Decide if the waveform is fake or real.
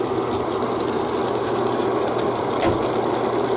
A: real